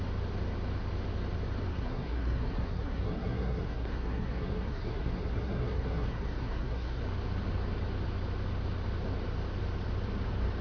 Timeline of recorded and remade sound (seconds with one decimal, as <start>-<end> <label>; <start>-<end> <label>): 0.0-1.7 recorded; 1.7-7.0 remade; 7.0-10.6 recorded